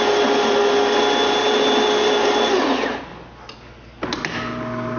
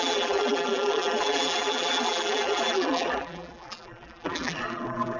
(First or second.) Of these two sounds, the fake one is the second